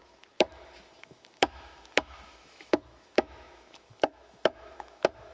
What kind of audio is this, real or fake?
fake